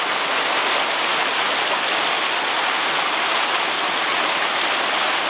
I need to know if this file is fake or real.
real